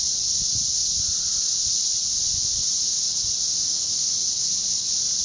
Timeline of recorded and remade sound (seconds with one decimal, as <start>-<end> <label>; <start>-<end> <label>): 0.0-3.6 recorded; 3.6-4.3 remade; 4.3-5.2 recorded